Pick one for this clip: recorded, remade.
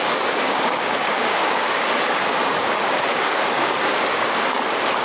remade